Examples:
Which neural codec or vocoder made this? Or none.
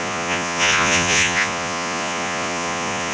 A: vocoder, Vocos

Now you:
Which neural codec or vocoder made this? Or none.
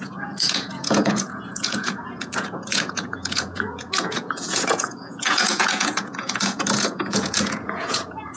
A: vocoder, Vocos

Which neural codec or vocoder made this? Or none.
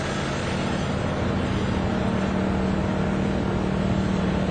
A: none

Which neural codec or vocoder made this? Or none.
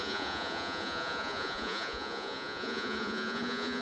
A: vocoder, Vocos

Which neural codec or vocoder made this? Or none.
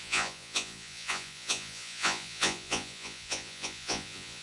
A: vocoder, Vocos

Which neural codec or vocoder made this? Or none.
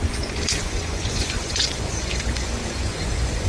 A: vocoder, Vocos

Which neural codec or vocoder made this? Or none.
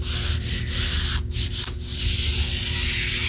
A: none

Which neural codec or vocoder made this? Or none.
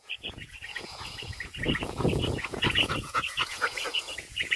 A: vocoder, Vocos